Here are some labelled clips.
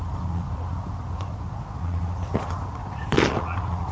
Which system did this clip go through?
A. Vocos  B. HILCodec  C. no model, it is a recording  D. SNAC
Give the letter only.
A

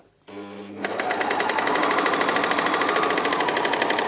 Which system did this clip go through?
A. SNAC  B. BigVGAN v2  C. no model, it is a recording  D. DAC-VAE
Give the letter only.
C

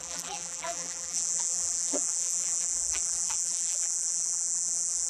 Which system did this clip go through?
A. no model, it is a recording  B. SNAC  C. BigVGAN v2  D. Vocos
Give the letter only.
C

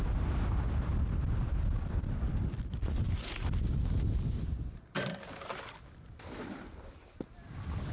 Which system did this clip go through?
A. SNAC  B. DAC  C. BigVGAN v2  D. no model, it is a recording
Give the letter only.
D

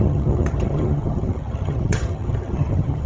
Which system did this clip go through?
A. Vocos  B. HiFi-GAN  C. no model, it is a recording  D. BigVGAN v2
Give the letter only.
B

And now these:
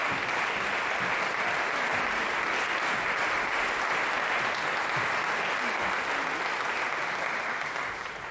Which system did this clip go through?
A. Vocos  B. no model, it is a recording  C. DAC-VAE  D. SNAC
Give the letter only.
B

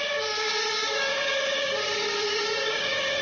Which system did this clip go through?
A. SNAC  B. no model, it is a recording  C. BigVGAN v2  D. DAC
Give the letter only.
D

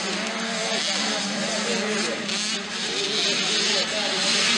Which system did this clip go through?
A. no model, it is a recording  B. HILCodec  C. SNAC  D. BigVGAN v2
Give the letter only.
A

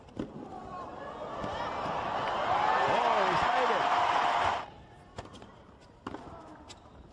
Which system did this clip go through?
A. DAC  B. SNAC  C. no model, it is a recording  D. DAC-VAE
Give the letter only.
C